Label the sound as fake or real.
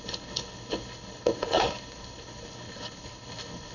fake